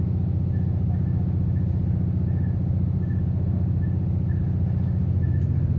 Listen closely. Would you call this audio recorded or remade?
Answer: recorded